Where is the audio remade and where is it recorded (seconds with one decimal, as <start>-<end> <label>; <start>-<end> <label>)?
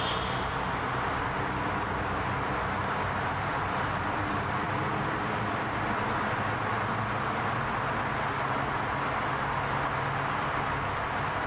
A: 0.0-2.8 recorded; 2.8-6.6 remade; 6.6-11.5 recorded